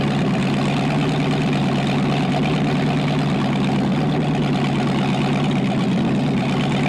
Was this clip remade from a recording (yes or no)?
no